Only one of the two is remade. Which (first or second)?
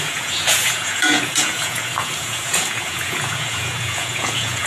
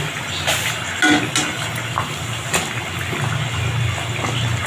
first